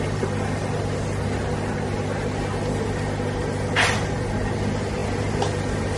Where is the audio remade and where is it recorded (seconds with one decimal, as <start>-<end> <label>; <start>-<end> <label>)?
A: 0.0-6.0 recorded